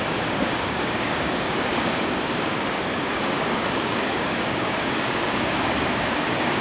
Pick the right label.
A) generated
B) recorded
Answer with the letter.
A